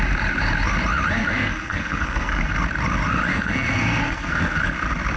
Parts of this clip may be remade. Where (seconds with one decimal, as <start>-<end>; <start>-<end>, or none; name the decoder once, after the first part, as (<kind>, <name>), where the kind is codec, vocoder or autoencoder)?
1.2-2.6 (codec, SNAC); 3.3-4.6

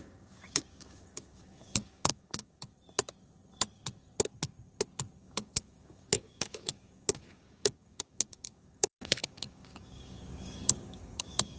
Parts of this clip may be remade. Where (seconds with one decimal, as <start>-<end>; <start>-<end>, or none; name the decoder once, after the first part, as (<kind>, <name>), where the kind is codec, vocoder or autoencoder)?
0.0-2.7 (codec, DAC); 5.2-11.6

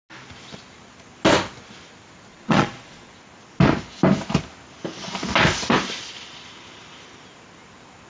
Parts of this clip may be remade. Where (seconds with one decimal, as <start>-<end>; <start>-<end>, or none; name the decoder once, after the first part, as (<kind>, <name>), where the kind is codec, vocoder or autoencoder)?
2.3-3.1 (vocoder, Vocos)

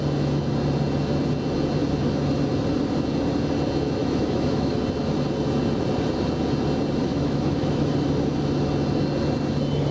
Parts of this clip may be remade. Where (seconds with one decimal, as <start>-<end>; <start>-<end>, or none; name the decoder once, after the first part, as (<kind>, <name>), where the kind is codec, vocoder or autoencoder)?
4.0-4.8 (autoencoder, DAC-VAE); 7.1-7.9

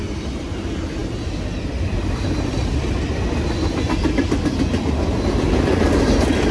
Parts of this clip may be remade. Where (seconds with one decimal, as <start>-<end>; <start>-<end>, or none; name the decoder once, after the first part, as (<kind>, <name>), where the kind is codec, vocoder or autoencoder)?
none

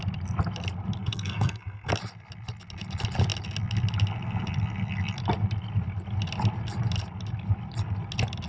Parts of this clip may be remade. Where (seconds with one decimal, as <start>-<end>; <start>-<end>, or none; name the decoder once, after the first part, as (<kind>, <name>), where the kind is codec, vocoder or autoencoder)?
1.0-1.9 (codec, SNAC)

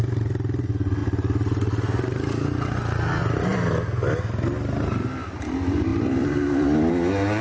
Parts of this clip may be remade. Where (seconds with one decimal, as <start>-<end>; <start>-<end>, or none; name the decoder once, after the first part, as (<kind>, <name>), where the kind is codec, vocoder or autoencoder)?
1.0-2.3 (vocoder, BigVGAN v2); 5.9-6.9